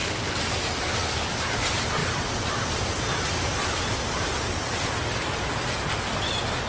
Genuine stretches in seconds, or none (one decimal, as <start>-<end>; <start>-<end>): 0.8-6.7